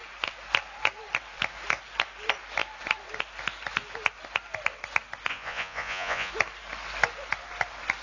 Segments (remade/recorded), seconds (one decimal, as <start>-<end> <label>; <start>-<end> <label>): 0.0-5.3 recorded; 5.3-6.3 remade; 6.3-8.0 recorded